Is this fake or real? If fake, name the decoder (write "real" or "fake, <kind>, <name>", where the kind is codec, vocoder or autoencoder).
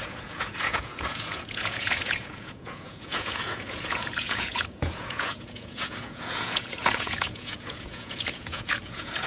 fake, vocoder, Vocos